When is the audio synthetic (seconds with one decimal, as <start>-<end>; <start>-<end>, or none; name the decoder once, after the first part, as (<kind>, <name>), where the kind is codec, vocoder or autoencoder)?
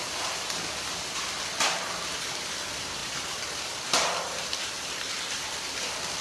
0.0-6.2 (vocoder, BigVGAN v2)